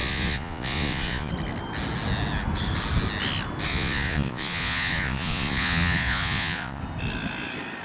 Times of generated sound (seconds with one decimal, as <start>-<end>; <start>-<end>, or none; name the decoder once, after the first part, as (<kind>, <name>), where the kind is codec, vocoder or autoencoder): 0.0-1.3 (vocoder, Vocos); 3.7-6.8